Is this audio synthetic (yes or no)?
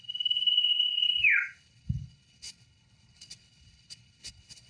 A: yes